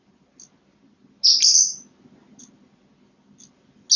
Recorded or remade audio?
recorded